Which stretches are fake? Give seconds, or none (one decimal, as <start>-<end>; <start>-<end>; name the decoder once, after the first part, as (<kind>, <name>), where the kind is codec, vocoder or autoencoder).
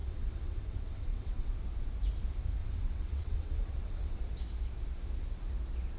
0.0-1.5 (vocoder, WaveNeXt); 2.6-4.2